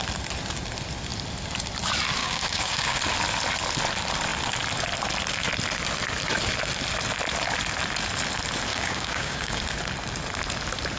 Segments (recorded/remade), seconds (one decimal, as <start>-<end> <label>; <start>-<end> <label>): 0.0-2.2 recorded; 2.2-3.0 remade; 3.0-8.7 recorded; 8.7-9.6 remade; 9.6-11.0 recorded